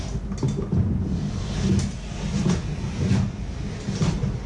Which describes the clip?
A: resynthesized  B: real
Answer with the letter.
B